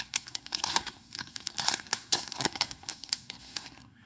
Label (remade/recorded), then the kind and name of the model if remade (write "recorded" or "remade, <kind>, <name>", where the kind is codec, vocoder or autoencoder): remade, codec, SNAC